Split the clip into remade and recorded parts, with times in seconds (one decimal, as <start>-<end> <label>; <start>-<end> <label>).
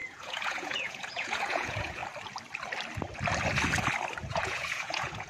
0.0-2.0 remade; 2.0-4.3 recorded; 4.3-5.3 remade